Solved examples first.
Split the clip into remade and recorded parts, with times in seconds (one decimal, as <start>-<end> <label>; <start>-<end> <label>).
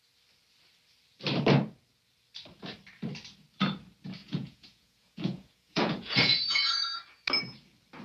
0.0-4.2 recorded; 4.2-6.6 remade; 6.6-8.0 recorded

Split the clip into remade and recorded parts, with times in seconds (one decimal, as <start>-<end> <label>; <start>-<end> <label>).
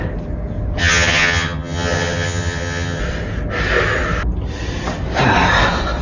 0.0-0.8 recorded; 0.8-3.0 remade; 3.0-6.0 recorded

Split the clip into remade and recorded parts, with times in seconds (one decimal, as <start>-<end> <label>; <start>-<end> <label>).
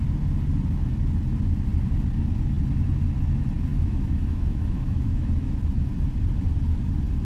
0.0-3.7 recorded; 3.7-5.6 remade; 5.6-7.2 recorded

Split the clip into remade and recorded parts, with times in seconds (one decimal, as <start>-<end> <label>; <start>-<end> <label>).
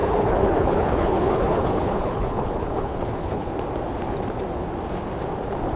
0.0-3.5 remade; 3.5-5.8 recorded